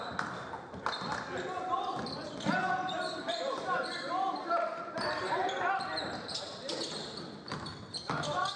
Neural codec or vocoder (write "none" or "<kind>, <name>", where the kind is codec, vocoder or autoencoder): none